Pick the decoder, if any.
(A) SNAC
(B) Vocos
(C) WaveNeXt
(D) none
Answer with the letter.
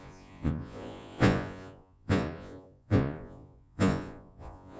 B